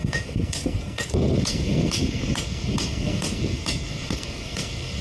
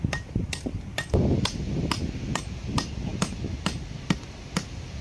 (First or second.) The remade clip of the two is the first